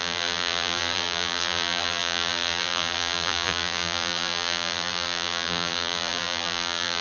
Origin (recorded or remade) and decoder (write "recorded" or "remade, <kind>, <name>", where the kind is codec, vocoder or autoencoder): remade, vocoder, BigVGAN v2